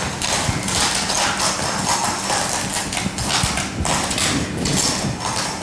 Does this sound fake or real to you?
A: real